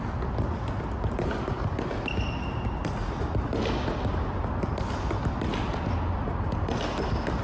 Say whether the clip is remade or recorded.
recorded